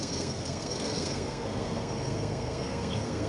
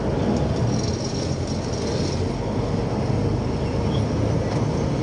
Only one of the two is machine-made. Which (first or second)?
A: first